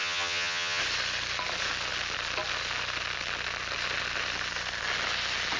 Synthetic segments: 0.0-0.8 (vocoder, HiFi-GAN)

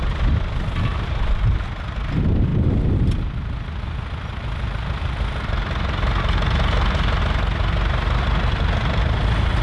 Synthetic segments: none

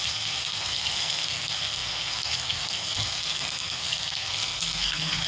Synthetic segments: 0.0-5.3 (codec, SNAC)

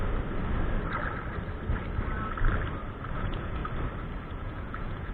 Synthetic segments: 3.1-3.6 (vocoder, Vocos); 4.3-5.1

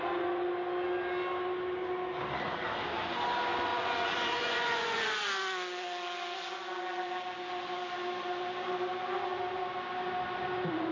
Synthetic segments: 3.7-5.3 (vocoder, Vocos)

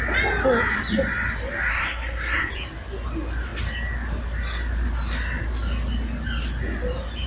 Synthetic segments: 1.7-2.5 (codec, SNAC)

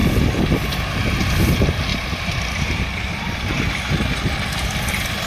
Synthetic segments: none